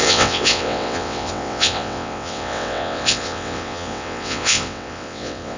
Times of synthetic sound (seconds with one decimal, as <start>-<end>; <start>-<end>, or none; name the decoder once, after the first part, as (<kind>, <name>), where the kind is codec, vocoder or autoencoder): 0.0-5.6 (vocoder, WaveNeXt)